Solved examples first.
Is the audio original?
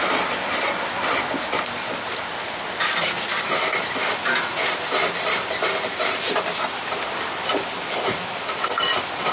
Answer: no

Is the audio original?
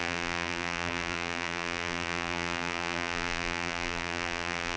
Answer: no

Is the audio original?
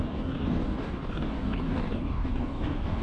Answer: no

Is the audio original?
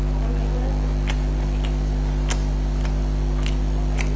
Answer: yes